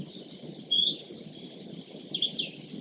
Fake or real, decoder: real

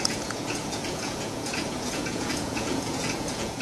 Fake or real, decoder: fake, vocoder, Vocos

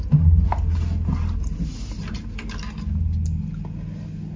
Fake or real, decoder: real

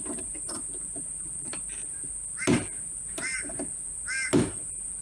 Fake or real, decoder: real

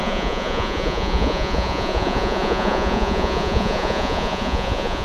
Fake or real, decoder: fake, vocoder, Vocos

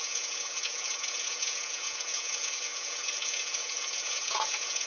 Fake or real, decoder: fake, vocoder, Vocos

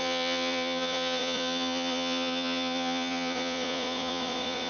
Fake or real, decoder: fake, vocoder, Vocos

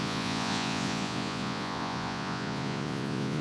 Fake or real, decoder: fake, vocoder, Vocos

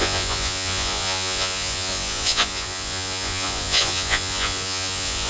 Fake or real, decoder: fake, vocoder, Vocos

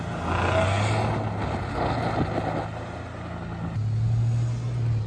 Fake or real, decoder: real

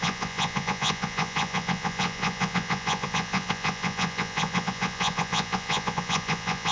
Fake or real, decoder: fake, vocoder, Vocos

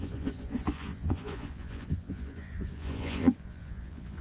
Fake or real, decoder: fake, vocoder, Vocos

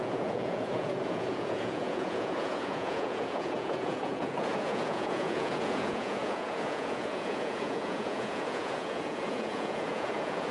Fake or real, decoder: fake, vocoder, Vocos